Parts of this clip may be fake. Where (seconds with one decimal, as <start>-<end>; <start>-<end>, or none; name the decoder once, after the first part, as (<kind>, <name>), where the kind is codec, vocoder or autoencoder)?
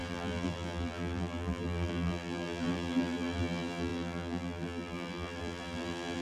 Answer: 0.0-6.2 (vocoder, BigVGAN v2)